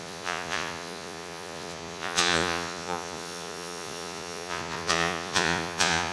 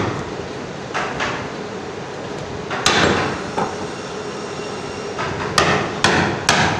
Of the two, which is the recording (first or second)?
second